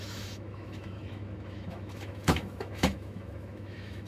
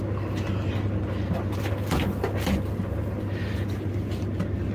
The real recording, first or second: second